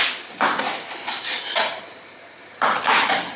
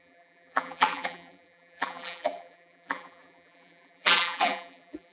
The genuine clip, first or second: first